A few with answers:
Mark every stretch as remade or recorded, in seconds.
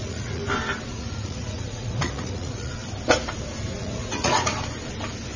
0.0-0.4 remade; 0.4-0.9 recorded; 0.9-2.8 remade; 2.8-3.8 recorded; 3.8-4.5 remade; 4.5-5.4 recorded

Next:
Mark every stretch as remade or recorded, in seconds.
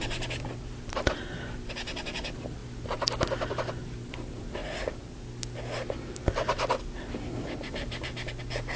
0.0-2.6 remade; 2.6-3.7 recorded; 3.7-4.6 remade; 4.6-8.8 recorded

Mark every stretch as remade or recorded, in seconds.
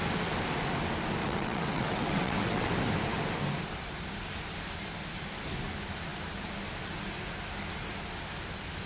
0.0-1.2 recorded; 1.2-2.7 remade; 2.7-8.9 recorded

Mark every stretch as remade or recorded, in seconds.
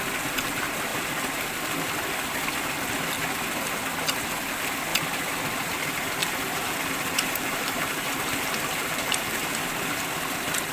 0.0-4.9 recorded; 4.9-5.4 remade; 5.4-6.2 recorded; 6.2-9.9 remade; 9.9-10.7 recorded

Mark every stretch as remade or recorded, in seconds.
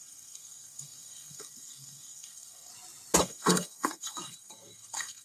0.0-2.7 remade; 2.7-3.2 recorded; 3.2-5.2 remade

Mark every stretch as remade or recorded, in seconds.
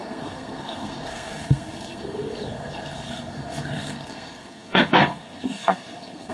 0.0-6.3 remade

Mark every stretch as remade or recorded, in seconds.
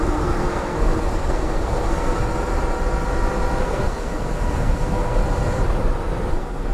0.0-2.3 remade; 2.3-3.6 recorded; 3.6-5.2 remade; 5.2-6.3 recorded; 6.3-6.7 remade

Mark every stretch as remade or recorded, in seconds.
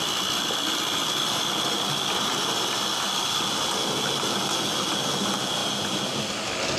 0.0-5.6 recorded; 5.6-6.3 remade; 6.3-6.8 recorded